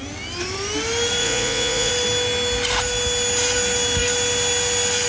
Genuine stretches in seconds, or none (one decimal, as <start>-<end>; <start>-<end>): 0.0-1.2; 1.9-5.1